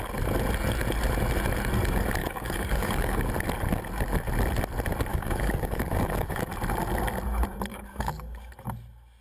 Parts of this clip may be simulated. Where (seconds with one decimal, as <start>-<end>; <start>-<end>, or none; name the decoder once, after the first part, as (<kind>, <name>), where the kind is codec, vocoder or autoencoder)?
2.2-3.3 (codec, DAC); 5.1-6.5; 7.7-8.5